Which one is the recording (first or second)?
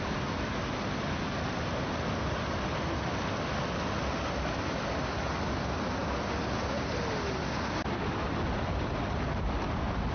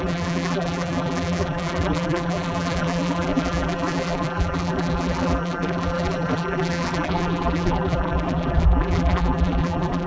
first